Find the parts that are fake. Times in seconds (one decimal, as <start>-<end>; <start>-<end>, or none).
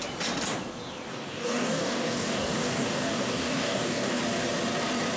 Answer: 1.1-4.2